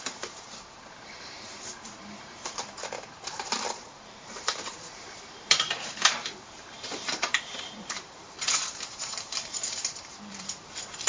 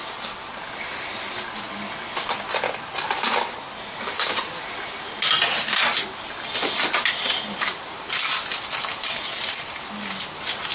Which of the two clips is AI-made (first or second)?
first